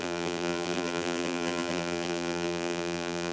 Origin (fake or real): fake